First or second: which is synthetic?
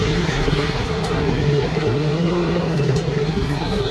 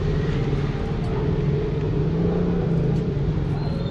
first